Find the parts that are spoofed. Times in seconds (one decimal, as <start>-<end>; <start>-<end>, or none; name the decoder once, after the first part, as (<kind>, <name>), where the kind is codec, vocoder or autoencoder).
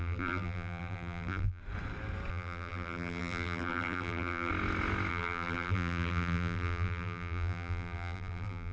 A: 0.0-1.6 (vocoder, BigVGAN v2); 2.3-4.5; 5.1-8.7